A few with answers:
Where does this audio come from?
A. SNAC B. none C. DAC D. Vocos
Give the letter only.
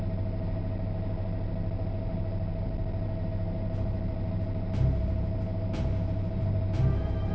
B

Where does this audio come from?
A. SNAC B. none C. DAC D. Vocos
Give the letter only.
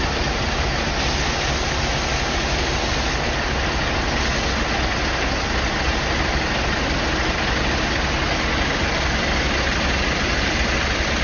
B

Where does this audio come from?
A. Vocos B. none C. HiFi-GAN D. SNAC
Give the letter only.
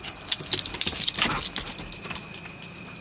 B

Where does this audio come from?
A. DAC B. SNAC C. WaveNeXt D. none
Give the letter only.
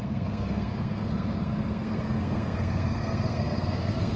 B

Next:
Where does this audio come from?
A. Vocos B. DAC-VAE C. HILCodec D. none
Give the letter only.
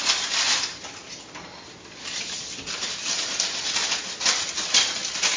D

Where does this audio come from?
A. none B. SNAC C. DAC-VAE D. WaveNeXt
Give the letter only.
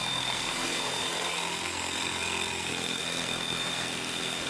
B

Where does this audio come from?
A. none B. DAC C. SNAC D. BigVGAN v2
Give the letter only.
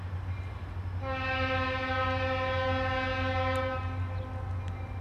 A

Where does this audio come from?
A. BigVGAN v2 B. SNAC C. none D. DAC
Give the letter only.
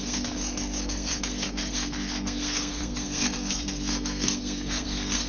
B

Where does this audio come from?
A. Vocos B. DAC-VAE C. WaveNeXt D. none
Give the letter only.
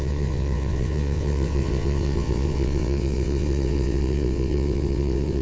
C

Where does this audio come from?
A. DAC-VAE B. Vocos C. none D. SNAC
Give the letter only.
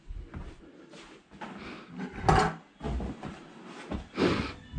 C